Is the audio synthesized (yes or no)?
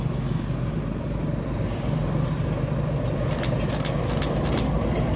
no